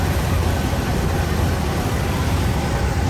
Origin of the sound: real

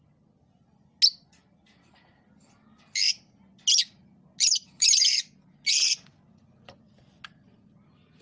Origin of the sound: real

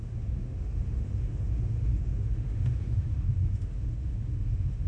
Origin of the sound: fake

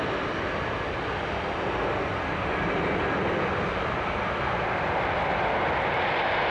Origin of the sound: real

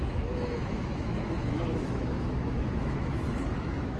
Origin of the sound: fake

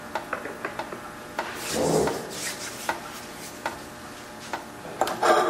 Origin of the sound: fake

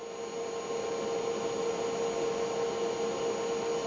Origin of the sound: real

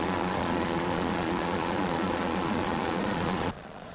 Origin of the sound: fake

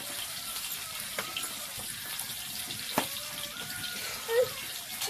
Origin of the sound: real